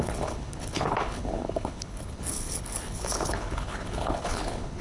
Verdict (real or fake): fake